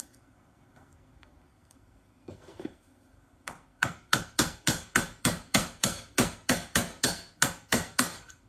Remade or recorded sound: remade